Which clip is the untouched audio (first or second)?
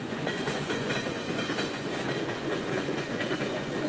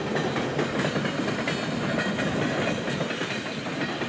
second